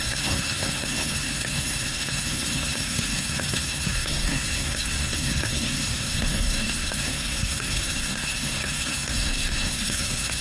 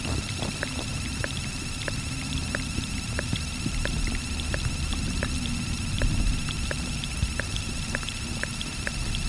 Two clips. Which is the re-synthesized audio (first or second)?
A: first